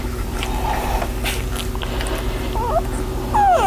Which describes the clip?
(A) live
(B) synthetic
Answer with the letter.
A